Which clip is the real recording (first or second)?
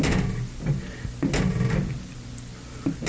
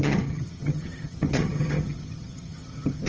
first